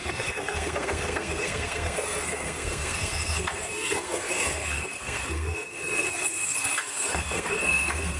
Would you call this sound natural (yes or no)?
no